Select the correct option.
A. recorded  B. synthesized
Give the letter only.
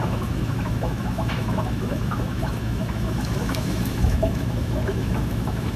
B